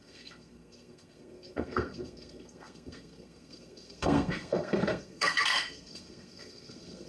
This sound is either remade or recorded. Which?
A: remade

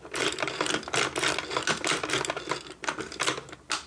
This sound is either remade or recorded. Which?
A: recorded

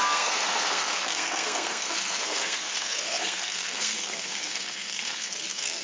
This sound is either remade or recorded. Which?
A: remade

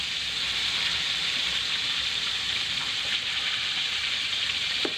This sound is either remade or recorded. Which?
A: remade